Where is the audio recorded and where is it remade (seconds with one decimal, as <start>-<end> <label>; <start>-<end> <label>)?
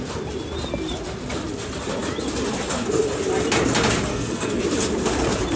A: 0.0-4.1 recorded; 4.1-4.6 remade; 4.6-5.6 recorded